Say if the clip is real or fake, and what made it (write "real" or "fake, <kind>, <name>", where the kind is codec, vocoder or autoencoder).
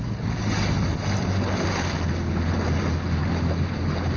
real